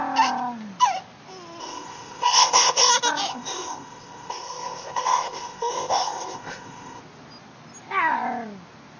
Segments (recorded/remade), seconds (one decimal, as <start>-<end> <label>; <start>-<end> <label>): 0.0-1.6 recorded; 1.6-2.9 remade; 2.9-3.3 recorded; 3.3-7.0 remade; 7.0-9.0 recorded